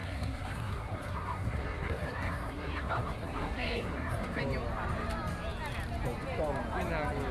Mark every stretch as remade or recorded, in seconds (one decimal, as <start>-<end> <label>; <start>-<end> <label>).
0.0-4.4 remade; 4.4-7.3 recorded